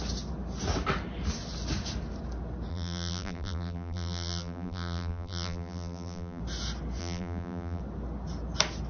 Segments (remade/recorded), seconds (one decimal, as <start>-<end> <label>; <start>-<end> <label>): 0.0-2.7 recorded; 2.7-6.4 remade; 6.4-7.0 recorded; 7.0-7.8 remade; 7.8-8.9 recorded